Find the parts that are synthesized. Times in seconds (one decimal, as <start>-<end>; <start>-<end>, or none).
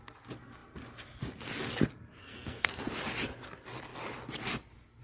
2.2-2.9